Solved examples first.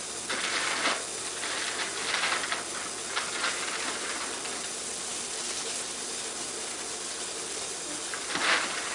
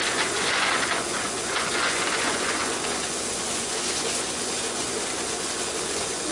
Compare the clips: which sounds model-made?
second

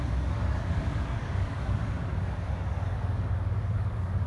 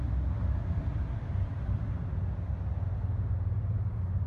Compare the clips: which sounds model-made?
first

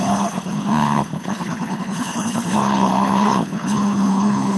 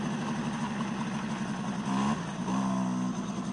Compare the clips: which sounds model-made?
first